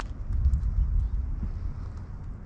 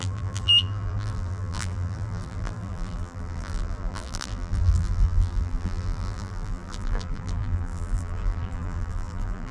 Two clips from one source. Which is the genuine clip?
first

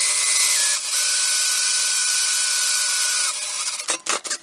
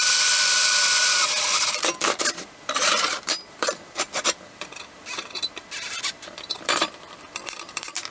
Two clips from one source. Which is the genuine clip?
first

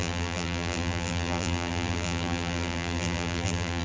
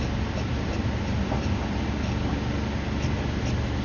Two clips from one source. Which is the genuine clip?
second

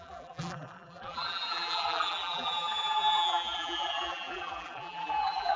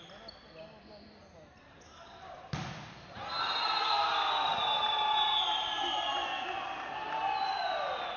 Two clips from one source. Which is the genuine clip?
second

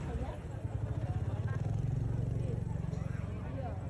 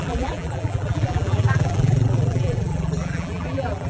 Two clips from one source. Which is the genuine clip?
first